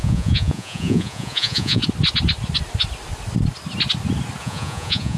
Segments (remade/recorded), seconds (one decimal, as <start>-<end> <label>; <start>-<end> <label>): 0.0-1.8 remade; 1.8-4.4 recorded; 4.4-5.2 remade

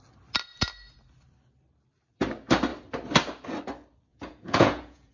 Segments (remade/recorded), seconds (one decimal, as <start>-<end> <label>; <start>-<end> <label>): 0.0-4.1 recorded; 4.1-5.1 remade

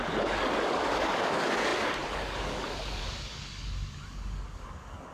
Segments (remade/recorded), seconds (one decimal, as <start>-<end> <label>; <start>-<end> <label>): 0.0-5.1 remade

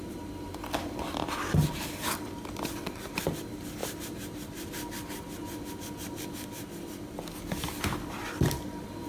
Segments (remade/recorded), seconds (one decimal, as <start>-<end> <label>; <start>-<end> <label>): 0.0-9.1 recorded

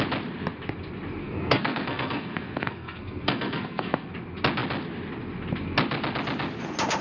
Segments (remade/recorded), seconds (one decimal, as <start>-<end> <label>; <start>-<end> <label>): 0.0-1.2 recorded; 1.2-4.1 remade; 4.1-7.0 recorded

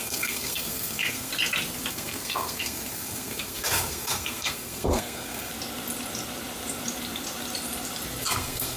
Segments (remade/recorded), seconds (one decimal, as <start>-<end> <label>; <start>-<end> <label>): 0.0-1.3 remade; 1.3-1.9 recorded; 1.9-5.5 remade; 5.5-8.2 recorded; 8.2-8.8 remade